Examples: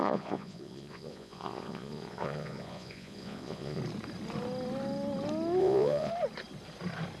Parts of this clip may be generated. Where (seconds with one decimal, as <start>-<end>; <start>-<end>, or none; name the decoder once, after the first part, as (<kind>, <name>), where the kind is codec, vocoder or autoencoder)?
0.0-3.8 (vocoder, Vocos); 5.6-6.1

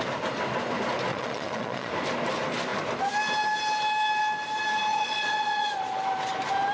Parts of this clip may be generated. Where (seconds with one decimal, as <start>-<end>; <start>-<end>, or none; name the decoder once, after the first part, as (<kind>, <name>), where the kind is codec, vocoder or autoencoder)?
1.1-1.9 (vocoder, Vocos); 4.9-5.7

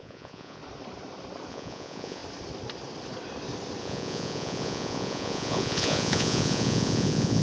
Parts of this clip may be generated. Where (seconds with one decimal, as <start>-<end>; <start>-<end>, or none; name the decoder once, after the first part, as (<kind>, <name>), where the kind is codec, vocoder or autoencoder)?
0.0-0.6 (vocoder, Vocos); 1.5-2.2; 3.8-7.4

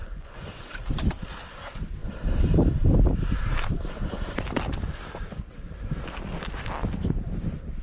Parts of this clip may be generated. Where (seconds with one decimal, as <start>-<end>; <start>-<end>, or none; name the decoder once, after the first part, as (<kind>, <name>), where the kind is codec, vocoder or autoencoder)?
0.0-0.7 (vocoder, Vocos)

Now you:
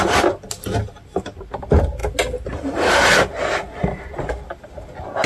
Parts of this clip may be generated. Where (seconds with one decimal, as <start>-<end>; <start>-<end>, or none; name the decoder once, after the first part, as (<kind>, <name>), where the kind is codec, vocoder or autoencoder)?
none

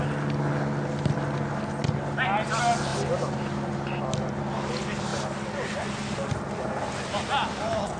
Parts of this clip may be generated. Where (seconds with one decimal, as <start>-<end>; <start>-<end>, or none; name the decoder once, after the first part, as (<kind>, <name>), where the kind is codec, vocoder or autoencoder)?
none

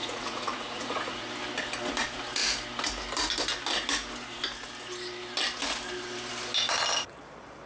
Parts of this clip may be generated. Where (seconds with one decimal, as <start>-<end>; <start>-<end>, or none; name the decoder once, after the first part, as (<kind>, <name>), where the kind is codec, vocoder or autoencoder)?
0.0-1.3 (vocoder, Vocos)